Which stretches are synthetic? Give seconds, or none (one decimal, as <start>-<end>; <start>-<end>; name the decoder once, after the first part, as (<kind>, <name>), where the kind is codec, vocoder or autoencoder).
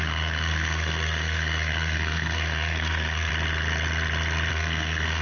0.0-3.3 (codec, SNAC); 4.5-5.2